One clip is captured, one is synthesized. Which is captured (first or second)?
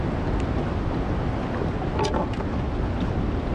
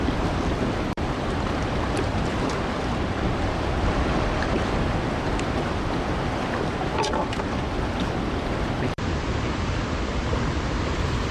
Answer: first